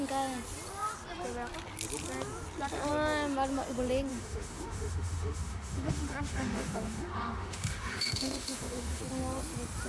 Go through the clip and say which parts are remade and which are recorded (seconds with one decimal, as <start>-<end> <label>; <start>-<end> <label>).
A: 0.0-4.1 recorded; 4.1-9.0 remade; 9.0-9.9 recorded